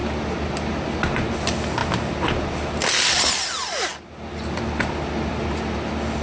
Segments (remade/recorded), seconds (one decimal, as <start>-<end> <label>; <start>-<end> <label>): 0.0-6.2 recorded